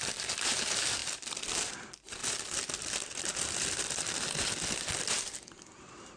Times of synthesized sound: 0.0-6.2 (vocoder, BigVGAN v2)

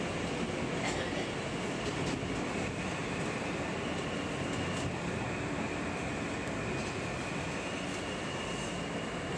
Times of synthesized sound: none

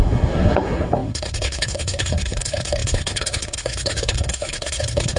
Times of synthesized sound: 0.0-5.2 (codec, SNAC)